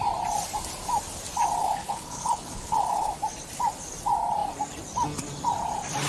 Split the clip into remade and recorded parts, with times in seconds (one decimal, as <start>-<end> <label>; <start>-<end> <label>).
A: 0.0-1.6 recorded; 1.6-3.1 remade; 3.1-6.1 recorded